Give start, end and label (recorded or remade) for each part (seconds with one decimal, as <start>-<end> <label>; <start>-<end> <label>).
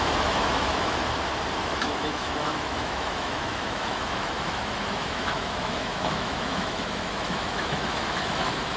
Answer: 0.0-1.0 remade; 1.0-1.6 recorded; 1.6-8.8 remade